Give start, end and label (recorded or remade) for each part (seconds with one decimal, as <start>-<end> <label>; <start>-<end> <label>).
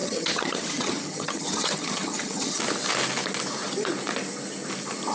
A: 0.0-2.6 remade; 2.6-5.1 recorded